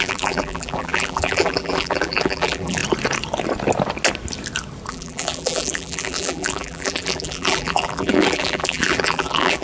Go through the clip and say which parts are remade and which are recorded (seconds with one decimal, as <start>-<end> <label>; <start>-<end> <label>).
0.0-2.8 remade; 2.8-4.9 recorded; 4.9-9.6 remade